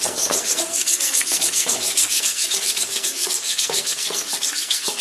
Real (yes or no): no